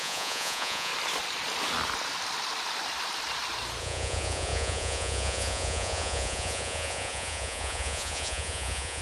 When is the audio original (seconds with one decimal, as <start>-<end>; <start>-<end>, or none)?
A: 0.9-3.8